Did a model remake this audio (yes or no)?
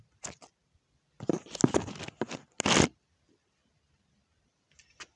no